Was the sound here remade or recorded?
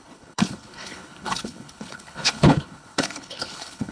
remade